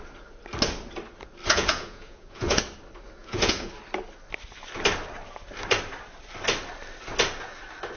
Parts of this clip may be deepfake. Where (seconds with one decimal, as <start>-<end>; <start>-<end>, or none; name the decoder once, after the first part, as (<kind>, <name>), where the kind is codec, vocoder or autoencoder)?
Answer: 1.4-2.6 (vocoder, Vocos); 3.2-3.7